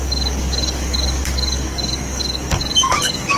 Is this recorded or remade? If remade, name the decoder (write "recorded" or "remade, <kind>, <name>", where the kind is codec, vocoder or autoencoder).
remade, codec, DAC